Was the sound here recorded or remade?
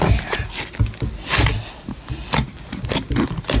recorded